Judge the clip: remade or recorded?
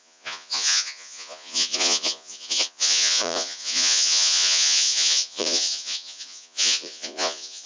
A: remade